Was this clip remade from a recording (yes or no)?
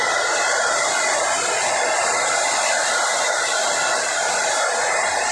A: no